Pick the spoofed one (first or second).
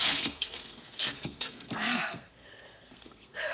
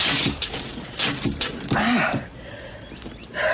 first